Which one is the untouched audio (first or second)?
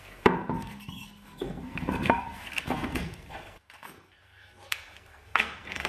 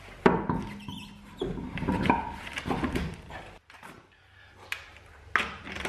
second